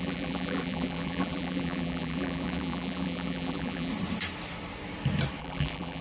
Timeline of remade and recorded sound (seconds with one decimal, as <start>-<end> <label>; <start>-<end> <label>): 0.0-3.9 remade; 3.9-5.4 recorded; 5.4-6.0 remade